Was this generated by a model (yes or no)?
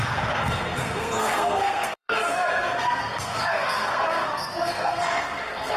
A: yes